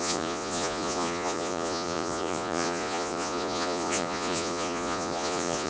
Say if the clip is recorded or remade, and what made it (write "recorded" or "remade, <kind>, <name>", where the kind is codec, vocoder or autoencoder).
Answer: remade, vocoder, Vocos